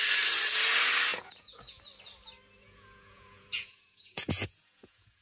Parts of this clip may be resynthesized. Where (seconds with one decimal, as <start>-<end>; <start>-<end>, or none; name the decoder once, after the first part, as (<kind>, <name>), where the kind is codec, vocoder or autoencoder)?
1.1-1.8 (vocoder, Vocos); 2.6-5.2